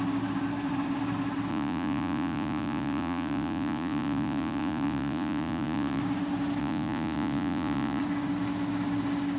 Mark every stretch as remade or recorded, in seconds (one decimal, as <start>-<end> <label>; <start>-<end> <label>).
0.0-1.5 recorded; 1.5-6.0 remade; 6.0-6.6 recorded; 6.6-8.0 remade; 8.0-9.4 recorded